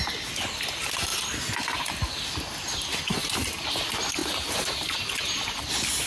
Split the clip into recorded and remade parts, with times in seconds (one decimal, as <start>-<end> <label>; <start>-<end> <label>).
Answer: 0.0-4.2 recorded; 4.2-5.6 remade; 5.6-6.1 recorded